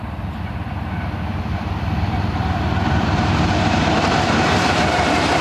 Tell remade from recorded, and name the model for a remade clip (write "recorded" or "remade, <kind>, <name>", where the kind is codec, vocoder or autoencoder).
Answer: recorded